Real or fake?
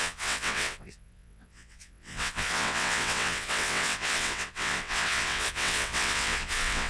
fake